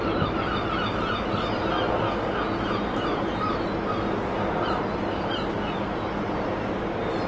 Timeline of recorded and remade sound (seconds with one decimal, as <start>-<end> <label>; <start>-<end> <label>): 0.0-7.3 recorded